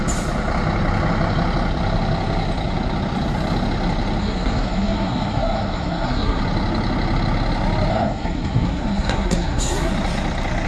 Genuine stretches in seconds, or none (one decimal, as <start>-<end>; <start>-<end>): 0.0-4.2; 6.4-7.9; 9.9-10.7